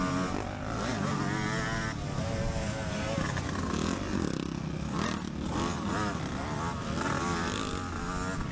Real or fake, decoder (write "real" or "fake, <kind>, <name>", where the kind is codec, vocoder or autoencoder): real